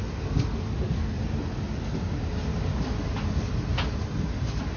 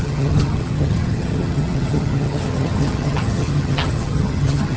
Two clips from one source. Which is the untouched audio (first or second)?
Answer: first